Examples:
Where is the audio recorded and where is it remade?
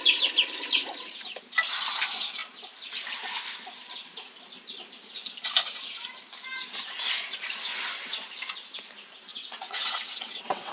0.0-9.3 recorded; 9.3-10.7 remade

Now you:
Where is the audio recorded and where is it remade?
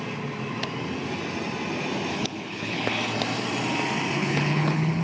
0.0-2.1 recorded; 2.1-2.9 remade; 2.9-4.2 recorded; 4.2-5.0 remade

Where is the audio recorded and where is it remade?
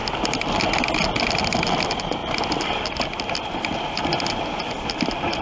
0.0-5.4 recorded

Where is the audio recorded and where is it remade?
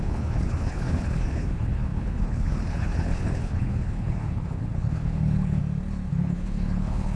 0.0-5.6 remade; 5.6-6.1 recorded; 6.1-7.2 remade